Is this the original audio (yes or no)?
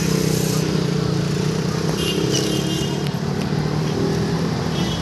yes